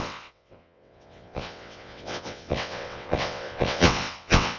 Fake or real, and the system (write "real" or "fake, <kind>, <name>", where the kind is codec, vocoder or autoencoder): fake, vocoder, WaveNeXt